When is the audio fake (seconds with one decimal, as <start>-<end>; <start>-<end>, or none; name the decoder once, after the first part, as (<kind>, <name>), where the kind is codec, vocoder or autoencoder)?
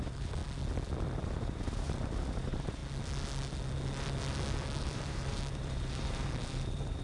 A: 0.0-0.4 (vocoder, BigVGAN v2); 1.0-2.8; 4.8-7.0